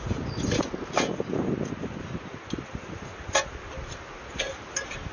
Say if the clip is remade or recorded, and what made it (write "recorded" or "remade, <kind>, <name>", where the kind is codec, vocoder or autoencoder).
recorded